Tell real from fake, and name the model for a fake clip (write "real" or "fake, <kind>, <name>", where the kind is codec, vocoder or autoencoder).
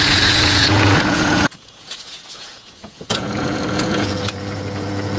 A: fake, vocoder, Vocos